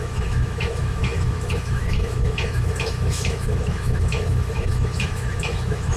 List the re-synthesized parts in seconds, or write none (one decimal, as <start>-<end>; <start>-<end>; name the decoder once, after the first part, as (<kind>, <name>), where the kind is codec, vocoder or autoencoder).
0.0-6.0 (autoencoder, DAC-VAE)